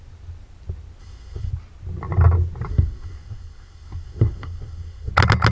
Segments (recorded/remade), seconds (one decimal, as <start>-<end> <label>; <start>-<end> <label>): 0.0-1.0 recorded; 1.0-1.5 remade; 1.5-2.7 recorded; 2.7-5.1 remade; 5.1-5.5 recorded